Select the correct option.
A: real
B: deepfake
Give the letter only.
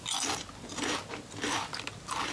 A